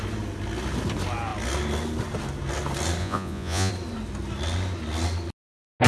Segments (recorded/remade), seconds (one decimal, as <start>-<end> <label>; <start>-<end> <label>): 0.0-3.0 recorded; 3.0-3.7 remade; 3.7-5.9 recorded